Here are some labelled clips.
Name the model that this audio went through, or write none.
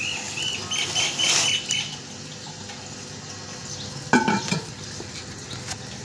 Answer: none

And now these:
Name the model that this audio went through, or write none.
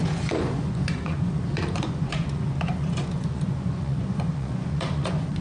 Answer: vocoder, Vocos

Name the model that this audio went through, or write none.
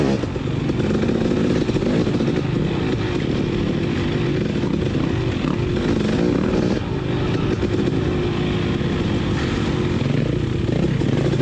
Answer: none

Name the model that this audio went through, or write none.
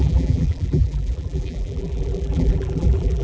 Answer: vocoder, BigVGAN v2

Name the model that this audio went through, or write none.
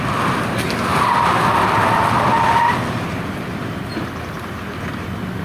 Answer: none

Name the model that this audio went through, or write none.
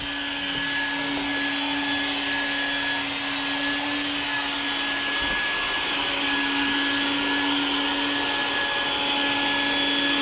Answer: none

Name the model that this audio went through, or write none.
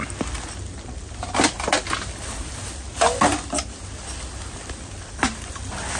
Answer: none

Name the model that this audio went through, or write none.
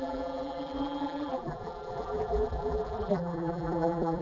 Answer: vocoder, BigVGAN v2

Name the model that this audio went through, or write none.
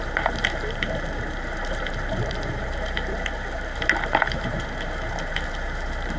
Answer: vocoder, BigVGAN v2